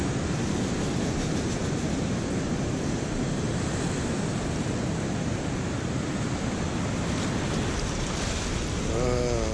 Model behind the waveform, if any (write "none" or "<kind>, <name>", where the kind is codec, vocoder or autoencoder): none